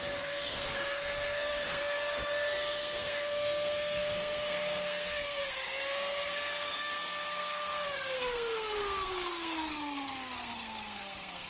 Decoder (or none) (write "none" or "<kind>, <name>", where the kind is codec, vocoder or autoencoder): codec, SNAC